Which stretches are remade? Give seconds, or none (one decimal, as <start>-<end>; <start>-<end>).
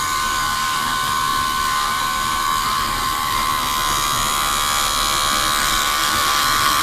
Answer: 0.0-3.5; 5.6-6.8